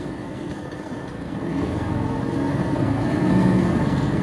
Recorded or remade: remade